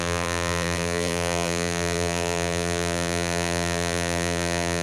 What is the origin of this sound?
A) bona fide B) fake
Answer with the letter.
B